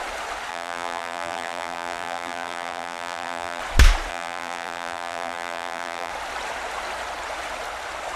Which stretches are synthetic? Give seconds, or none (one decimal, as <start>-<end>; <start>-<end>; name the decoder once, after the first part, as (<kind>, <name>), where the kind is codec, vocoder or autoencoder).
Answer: 0.5-3.6 (vocoder, BigVGAN v2); 4.1-6.1